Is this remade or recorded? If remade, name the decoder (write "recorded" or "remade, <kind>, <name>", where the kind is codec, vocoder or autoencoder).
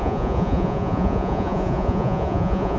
remade, vocoder, Vocos